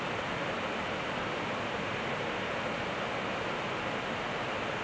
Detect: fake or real real